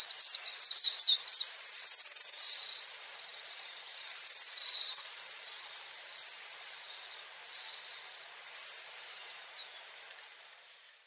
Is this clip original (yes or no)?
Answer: no